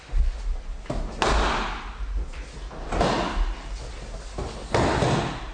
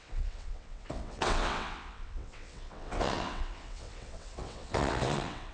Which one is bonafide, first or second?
first